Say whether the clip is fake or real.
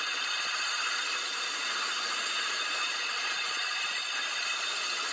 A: real